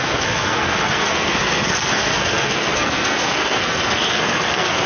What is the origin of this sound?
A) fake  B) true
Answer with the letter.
A